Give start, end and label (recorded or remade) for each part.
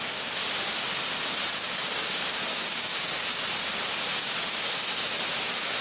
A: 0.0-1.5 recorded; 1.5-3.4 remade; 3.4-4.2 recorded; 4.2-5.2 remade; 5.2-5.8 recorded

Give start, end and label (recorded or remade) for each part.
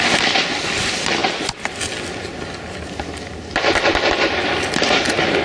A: 0.0-5.4 recorded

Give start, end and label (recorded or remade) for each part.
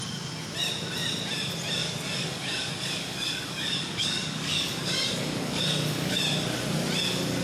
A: 0.0-1.8 recorded; 1.8-6.2 remade; 6.2-7.4 recorded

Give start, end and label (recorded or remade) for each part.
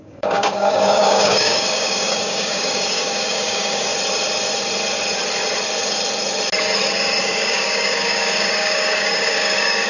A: 0.0-3.9 remade; 3.9-7.2 recorded; 7.2-9.9 remade